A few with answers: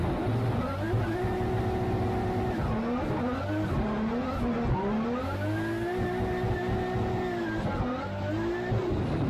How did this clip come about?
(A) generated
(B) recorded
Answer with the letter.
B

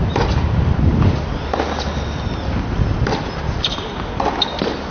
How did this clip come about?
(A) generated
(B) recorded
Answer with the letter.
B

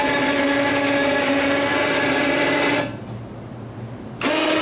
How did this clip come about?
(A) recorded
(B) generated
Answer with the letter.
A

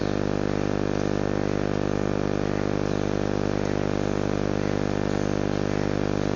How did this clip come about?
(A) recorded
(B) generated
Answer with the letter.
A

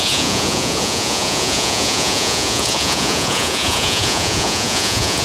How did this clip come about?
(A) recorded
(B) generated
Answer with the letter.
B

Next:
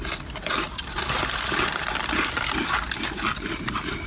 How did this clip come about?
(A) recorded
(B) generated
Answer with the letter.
A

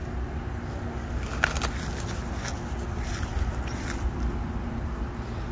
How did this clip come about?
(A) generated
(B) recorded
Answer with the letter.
B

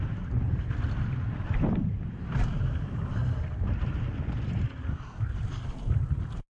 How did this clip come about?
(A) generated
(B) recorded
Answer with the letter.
B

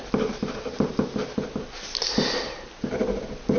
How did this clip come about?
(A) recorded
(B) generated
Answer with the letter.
A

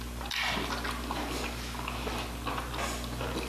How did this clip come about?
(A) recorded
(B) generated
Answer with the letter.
A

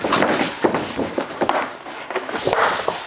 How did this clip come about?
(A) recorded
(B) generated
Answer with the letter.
A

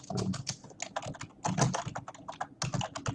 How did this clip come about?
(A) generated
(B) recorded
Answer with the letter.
B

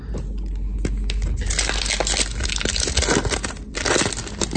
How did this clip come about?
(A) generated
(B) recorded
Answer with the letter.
B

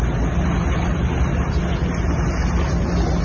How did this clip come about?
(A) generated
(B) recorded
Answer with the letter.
B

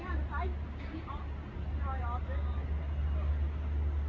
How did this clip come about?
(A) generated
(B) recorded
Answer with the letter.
B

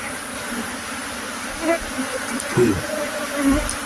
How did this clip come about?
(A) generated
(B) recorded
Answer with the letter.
B